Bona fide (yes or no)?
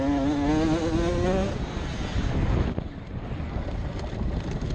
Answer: yes